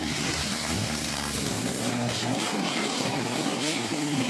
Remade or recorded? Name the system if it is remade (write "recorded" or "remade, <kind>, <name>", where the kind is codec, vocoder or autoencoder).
remade, codec, SNAC